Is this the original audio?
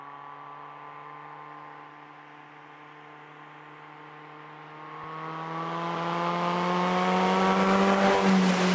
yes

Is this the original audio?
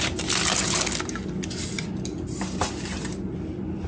yes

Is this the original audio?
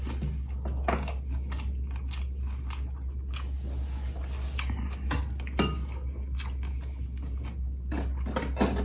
yes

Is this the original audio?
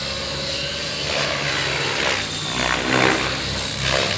yes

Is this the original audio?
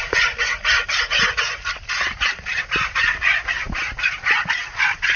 yes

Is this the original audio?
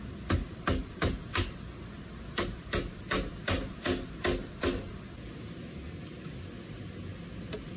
yes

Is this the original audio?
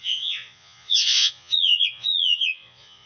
no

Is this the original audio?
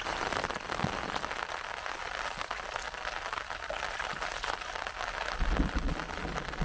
yes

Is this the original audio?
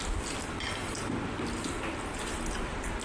yes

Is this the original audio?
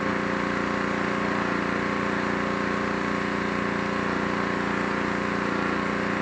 yes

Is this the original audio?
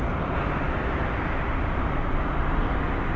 yes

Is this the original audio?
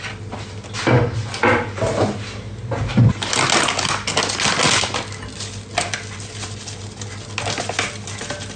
yes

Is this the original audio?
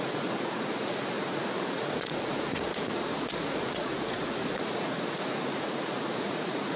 no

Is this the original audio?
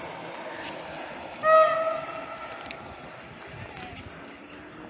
yes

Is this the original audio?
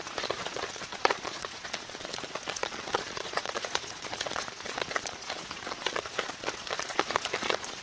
no